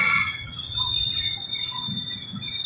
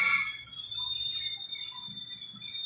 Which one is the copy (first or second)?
first